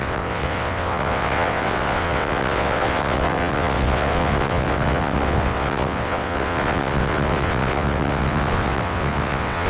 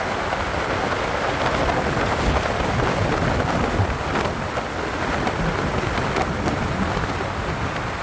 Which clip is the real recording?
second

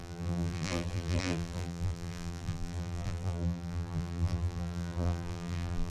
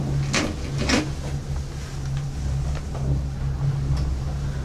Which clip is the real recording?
second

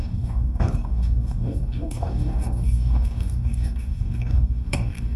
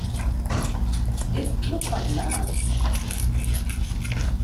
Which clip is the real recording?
second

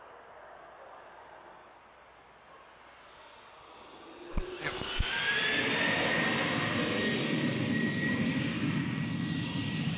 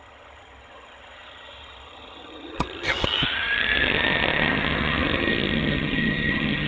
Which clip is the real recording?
first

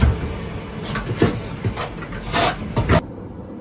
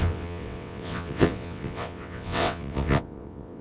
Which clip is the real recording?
first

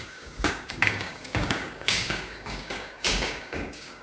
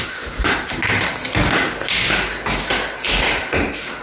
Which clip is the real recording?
second